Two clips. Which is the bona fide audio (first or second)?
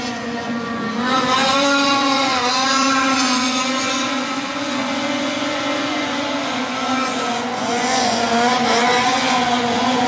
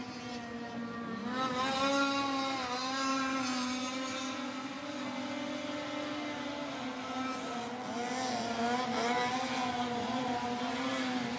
second